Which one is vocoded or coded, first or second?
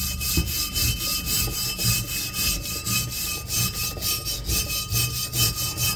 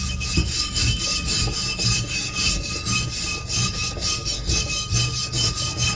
second